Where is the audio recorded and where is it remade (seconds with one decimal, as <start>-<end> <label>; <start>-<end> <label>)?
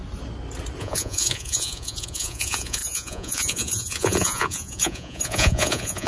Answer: 0.0-0.8 recorded; 0.8-6.1 remade